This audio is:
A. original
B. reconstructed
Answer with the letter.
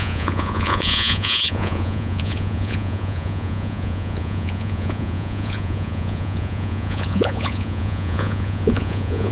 B